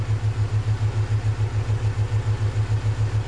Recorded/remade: recorded